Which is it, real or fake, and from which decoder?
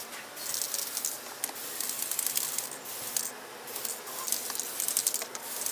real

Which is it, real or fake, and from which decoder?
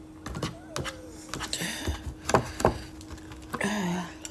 real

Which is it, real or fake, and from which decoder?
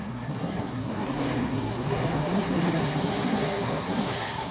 fake, codec, SNAC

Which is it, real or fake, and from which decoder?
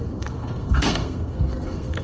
fake, codec, SNAC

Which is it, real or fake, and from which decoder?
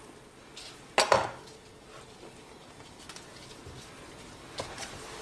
real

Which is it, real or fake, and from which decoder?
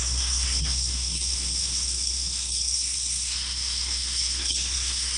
fake, codec, SNAC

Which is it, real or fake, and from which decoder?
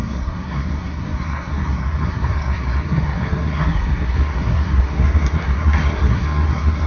fake, codec, SNAC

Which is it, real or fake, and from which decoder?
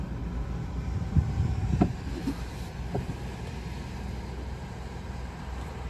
real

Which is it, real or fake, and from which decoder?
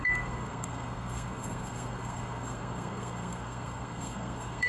fake, codec, SNAC